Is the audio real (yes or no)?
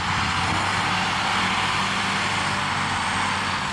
yes